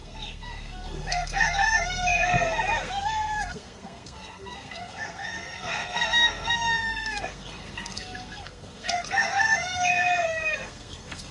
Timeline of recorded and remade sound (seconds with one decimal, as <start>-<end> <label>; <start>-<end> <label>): 0.0-11.3 remade